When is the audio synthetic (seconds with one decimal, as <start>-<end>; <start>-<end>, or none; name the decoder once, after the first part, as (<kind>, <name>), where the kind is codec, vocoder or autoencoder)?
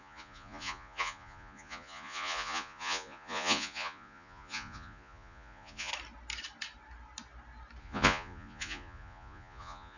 0.0-5.9 (vocoder, Vocos); 7.8-10.0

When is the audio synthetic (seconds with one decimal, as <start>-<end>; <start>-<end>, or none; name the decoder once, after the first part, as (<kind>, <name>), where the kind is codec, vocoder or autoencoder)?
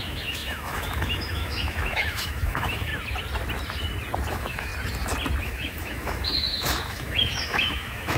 0.0-2.9 (autoencoder, DAC-VAE); 4.3-4.7; 5.4-8.2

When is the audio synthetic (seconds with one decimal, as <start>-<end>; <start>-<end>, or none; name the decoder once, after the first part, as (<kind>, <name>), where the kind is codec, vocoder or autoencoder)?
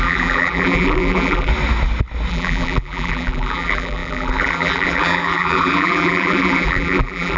0.0-1.5 (vocoder, BigVGAN v2); 2.3-7.4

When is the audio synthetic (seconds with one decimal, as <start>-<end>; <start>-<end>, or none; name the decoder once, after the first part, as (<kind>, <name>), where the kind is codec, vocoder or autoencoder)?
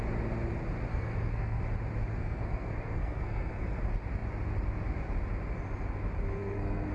0.9-1.6 (codec, SNAC); 2.1-3.8; 6.4-6.9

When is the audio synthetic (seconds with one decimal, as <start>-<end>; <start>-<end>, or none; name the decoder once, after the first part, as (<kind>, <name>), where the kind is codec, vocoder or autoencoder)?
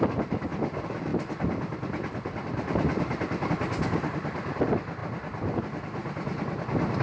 none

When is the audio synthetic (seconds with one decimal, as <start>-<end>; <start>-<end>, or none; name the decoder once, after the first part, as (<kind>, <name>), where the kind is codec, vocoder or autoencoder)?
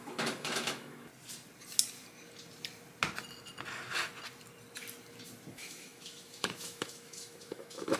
0.0-1.1 (autoencoder, DAC-VAE); 5.5-8.0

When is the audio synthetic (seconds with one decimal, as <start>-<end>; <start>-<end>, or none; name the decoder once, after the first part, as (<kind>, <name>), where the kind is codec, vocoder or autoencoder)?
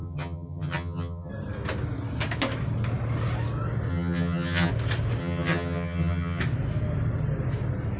0.0-1.3 (vocoder, HiFi-GAN); 3.9-4.7; 5.2-6.4